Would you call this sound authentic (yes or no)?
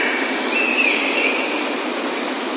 yes